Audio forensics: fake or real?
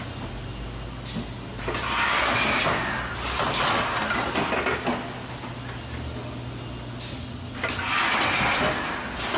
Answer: real